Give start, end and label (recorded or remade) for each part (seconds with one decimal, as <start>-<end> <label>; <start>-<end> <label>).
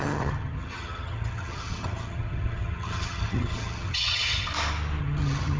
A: 0.0-4.5 remade; 4.5-5.0 recorded; 5.0-5.6 remade